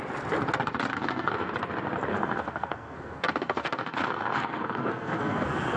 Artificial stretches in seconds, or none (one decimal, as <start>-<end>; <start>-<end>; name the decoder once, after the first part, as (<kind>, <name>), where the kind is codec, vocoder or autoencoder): 0.9-1.5 (codec, SNAC); 2.1-5.8